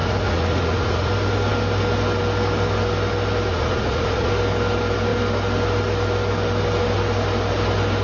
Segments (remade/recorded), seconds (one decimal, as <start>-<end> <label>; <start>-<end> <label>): 0.0-1.1 remade; 1.1-3.5 recorded; 3.5-4.3 remade; 4.3-8.0 recorded